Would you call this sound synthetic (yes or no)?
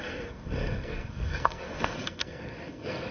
yes